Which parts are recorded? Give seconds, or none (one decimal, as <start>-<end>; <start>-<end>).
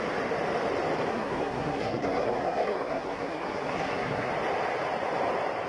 0.0-1.1; 4.3-5.7